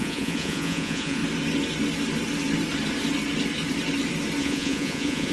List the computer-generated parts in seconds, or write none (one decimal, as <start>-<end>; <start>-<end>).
0.0-1.2; 4.4-5.3